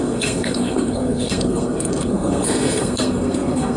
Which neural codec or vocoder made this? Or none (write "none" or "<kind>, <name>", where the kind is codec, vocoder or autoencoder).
codec, SNAC